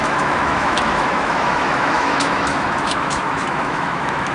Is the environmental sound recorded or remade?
remade